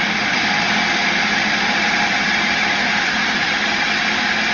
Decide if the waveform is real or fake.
real